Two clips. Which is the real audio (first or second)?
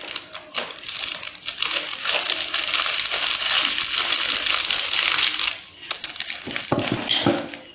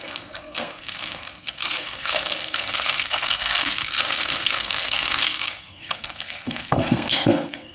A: first